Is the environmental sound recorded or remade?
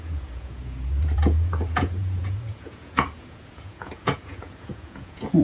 remade